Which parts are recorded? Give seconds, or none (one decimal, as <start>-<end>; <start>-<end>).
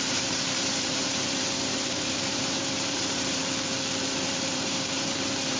3.4-4.0